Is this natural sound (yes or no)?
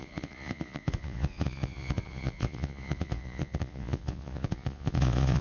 no